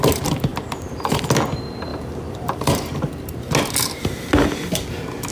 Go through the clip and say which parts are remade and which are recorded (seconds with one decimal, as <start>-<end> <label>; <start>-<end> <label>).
0.0-0.5 recorded; 0.5-1.2 remade; 1.2-1.9 recorded; 1.9-3.1 remade; 3.1-5.3 recorded